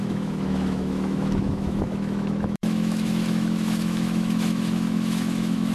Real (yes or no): no